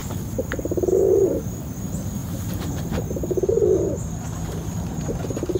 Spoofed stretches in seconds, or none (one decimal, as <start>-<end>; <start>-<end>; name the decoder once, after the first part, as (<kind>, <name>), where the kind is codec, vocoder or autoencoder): 0.0-0.6 (vocoder, BigVGAN v2); 2.2-3.0

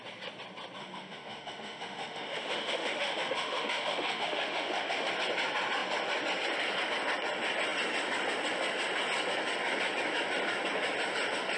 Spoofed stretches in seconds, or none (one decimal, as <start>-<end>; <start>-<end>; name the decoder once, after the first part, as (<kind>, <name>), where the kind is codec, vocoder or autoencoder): 0.8-5.1 (autoencoder, DAC-VAE)

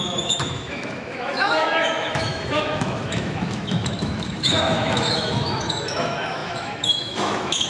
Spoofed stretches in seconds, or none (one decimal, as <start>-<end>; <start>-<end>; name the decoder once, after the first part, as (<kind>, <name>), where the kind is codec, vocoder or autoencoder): 0.0-7.7 (autoencoder, DAC-VAE)

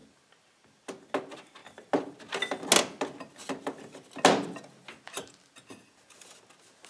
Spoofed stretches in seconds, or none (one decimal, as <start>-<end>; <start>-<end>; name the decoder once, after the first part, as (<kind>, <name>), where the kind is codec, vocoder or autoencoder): none